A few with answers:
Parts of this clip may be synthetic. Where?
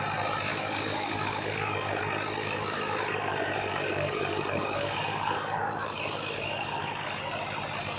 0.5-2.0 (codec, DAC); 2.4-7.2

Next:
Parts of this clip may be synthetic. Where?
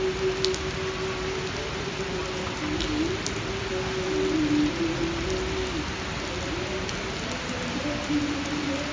none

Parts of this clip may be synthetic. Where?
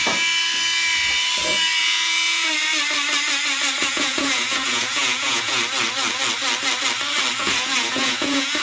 1.8-2.5 (vocoder, Vocos); 3.8-5.6; 7.4-8.6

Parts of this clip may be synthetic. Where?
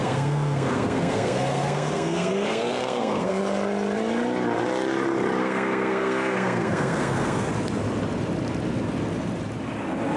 0.0-3.4 (codec, SNAC); 5.4-7.5